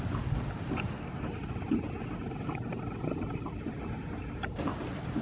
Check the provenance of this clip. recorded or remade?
recorded